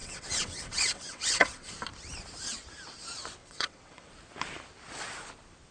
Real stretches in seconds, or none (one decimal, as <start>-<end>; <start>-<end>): 1.7-3.4; 4.1-5.7